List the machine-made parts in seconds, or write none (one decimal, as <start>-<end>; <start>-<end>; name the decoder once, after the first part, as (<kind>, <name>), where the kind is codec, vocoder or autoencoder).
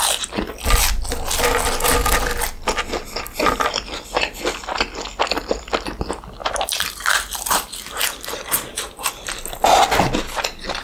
6.4-9.1 (vocoder, BigVGAN v2)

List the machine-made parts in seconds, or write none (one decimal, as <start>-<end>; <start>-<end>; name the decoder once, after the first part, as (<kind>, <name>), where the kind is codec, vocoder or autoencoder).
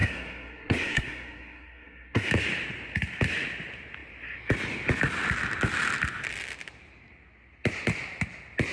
0.0-2.3 (codec, SNAC)